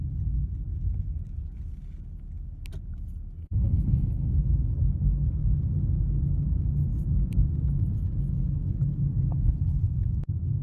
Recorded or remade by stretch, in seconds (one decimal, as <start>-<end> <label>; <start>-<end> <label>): 0.0-3.4 recorded; 3.4-4.4 remade; 4.4-10.6 recorded